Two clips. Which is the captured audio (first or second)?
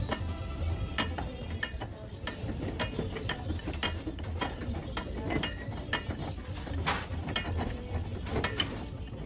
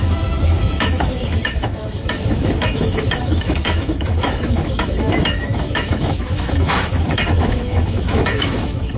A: first